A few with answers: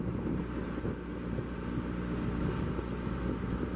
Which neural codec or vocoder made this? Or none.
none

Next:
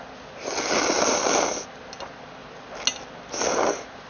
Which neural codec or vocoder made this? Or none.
none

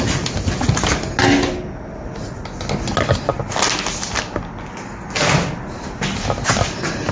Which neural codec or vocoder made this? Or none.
none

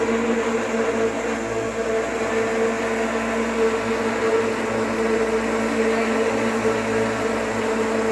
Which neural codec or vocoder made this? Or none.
none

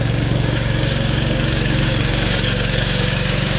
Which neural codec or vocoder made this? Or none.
codec, DAC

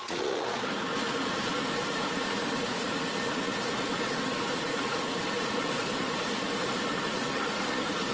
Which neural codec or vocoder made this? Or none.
vocoder, Vocos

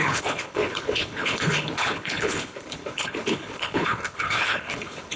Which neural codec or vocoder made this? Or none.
codec, HILCodec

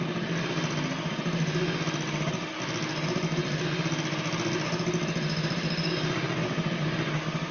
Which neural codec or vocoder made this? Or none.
none